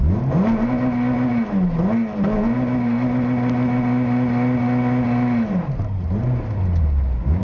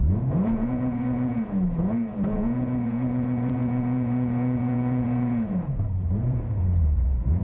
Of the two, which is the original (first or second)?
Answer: first